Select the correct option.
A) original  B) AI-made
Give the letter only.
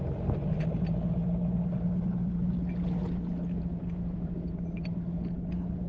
A